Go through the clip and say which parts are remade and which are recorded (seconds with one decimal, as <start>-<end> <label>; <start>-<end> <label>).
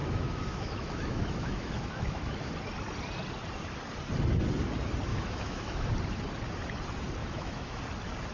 0.0-2.5 remade; 2.5-5.1 recorded; 5.1-5.9 remade; 5.9-7.2 recorded; 7.2-7.8 remade; 7.8-8.3 recorded